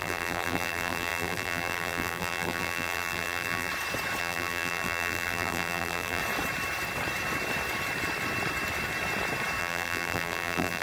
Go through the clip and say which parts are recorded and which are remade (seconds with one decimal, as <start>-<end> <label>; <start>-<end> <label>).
0.0-3.7 remade; 3.7-4.2 recorded; 4.2-6.2 remade; 6.2-9.6 recorded; 9.6-10.8 remade